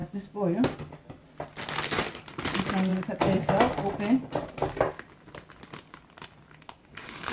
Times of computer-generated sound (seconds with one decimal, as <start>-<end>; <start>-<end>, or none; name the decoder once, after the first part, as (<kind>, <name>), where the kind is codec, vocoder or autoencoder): none